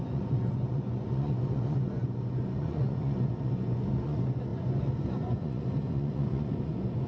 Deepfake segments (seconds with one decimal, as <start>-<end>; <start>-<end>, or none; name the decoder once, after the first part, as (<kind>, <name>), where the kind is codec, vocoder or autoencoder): 0.0-7.1 (vocoder, Vocos)